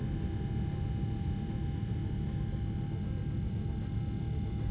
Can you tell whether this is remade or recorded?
recorded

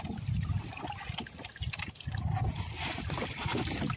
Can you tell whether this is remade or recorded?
recorded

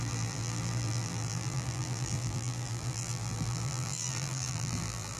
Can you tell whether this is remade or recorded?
remade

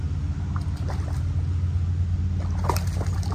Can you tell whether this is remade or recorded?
recorded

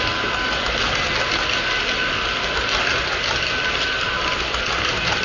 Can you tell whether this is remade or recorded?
recorded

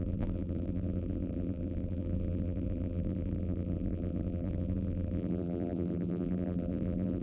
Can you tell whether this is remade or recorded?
remade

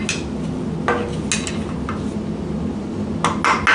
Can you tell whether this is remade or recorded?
recorded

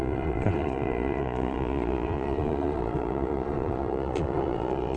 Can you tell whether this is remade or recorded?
remade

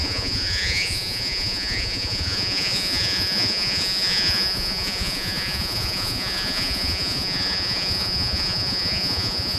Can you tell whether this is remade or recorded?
remade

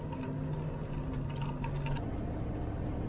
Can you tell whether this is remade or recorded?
recorded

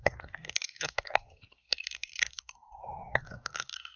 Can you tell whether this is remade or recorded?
remade